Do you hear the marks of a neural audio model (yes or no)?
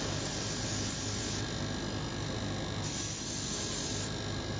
no